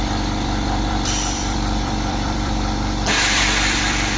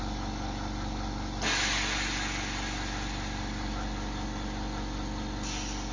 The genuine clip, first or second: second